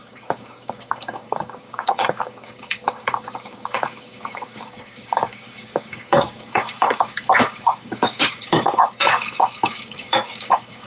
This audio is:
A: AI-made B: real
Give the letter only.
A